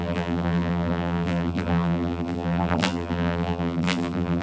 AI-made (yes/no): yes